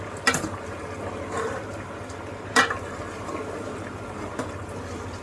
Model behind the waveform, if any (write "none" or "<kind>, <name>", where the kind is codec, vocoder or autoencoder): none